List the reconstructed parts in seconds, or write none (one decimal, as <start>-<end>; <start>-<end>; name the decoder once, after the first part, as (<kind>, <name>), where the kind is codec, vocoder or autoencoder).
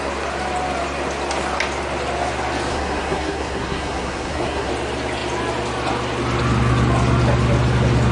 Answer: 2.7-4.7 (codec, SNAC)